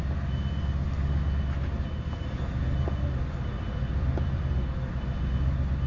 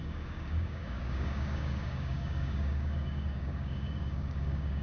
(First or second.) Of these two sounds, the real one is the first